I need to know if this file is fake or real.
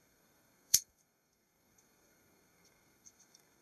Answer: fake